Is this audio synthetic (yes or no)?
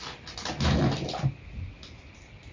no